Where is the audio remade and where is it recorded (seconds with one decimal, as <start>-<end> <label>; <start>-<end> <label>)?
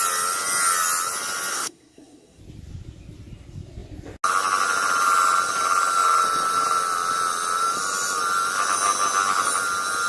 0.0-1.5 recorded; 1.5-2.4 remade; 2.4-10.1 recorded